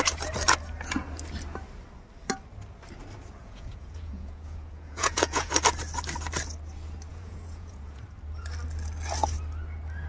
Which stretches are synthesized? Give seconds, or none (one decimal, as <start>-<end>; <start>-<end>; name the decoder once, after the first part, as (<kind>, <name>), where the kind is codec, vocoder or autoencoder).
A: 3.4-5.5 (vocoder, Vocos); 7.1-8.0